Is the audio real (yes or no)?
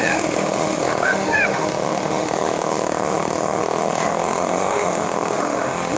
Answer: no